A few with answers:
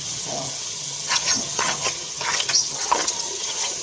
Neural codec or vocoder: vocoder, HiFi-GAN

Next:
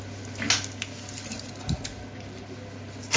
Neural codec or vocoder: none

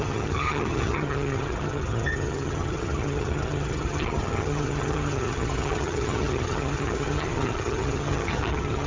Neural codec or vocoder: vocoder, HiFi-GAN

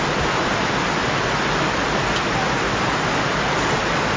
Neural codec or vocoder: none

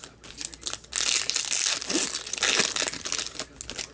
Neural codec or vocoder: none